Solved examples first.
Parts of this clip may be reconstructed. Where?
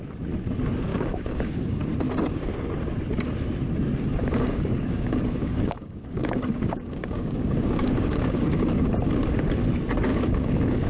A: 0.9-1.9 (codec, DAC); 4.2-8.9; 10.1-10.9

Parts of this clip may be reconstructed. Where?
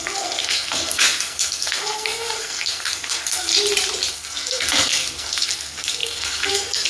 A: 0.0-3.5 (codec, SNAC); 4.1-6.9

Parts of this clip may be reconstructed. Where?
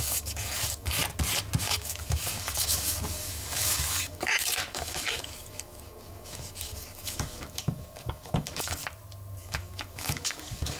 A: 0.0-1.0 (codec, DAC); 1.6-8.8; 9.4-10.8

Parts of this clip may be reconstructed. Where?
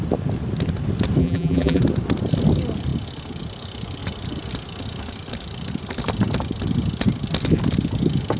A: 1.2-1.8 (vocoder, BigVGAN v2)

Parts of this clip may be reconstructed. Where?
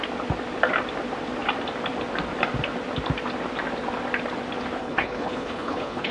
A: 4.8-6.1 (codec, HILCodec)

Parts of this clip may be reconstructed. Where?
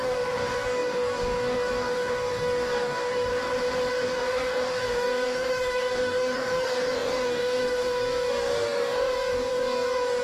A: 0.0-3.3 (codec, DAC); 3.9-10.2